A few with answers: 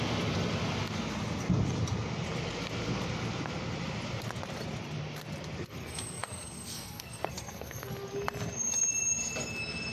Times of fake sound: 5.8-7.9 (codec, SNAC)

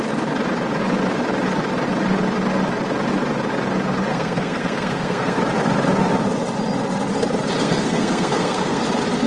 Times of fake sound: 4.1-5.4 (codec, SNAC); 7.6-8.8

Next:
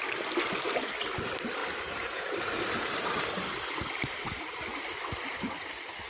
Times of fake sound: none